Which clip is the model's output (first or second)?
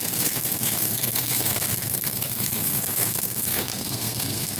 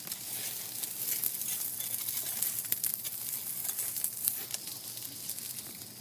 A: first